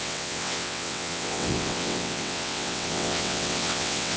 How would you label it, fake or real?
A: fake